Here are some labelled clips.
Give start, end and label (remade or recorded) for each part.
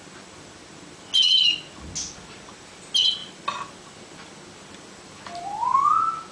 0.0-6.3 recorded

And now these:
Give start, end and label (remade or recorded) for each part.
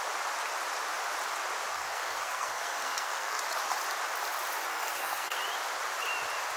0.0-1.7 recorded; 1.7-3.4 remade; 3.4-4.7 recorded; 4.7-5.4 remade; 5.4-6.6 recorded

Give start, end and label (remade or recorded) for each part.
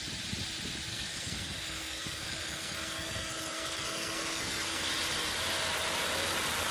0.0-0.9 recorded; 0.9-4.9 remade; 4.9-6.7 recorded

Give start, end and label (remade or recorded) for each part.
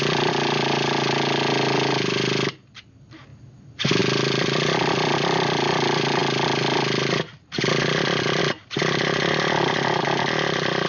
0.0-10.9 recorded